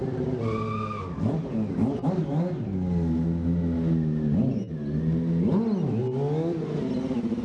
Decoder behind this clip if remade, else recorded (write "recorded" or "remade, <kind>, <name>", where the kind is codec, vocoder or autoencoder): recorded